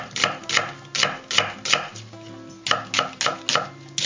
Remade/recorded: recorded